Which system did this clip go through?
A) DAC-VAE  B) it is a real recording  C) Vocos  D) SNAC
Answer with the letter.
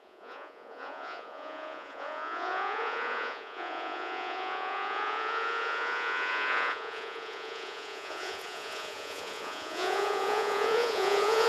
C